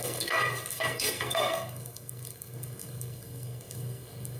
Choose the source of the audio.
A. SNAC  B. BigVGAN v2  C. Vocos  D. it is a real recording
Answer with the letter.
A